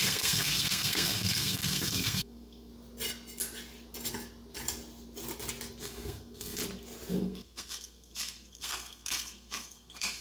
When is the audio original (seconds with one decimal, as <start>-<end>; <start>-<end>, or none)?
2.7-5.8; 6.6-7.1